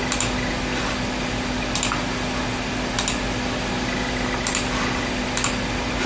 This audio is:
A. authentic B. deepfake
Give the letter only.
A